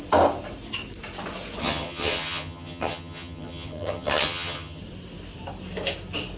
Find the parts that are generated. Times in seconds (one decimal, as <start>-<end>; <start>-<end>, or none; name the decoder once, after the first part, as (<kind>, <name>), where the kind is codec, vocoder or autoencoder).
1.6-4.8 (vocoder, HiFi-GAN)